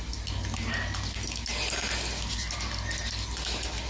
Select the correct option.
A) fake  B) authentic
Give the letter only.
B